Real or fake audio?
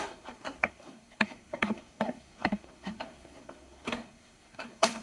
fake